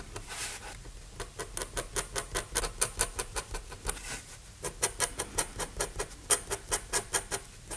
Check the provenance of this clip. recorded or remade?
recorded